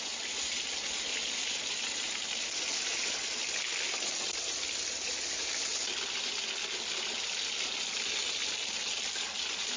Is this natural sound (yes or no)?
yes